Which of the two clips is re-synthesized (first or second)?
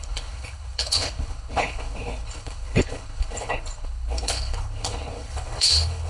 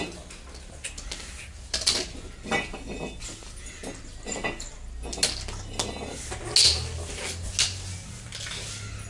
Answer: first